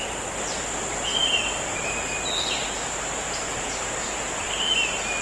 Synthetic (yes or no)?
no